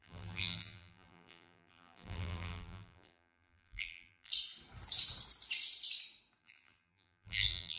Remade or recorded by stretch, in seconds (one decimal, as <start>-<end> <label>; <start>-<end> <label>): 0.0-4.3 remade; 4.3-6.4 recorded; 6.4-7.8 remade